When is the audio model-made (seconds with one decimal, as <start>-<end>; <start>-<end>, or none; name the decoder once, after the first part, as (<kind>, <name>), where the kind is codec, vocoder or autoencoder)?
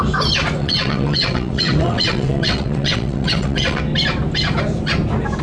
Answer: 0.6-3.8 (vocoder, WaveNeXt)